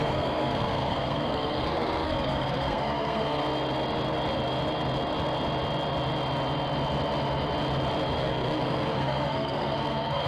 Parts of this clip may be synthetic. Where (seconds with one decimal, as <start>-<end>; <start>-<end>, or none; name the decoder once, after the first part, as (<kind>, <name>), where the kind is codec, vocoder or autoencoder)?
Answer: 0.0-3.4 (codec, SNAC); 8.2-10.3